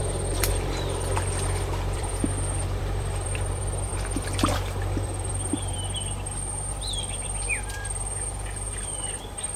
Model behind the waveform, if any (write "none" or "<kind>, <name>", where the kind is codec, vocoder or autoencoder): vocoder, BigVGAN v2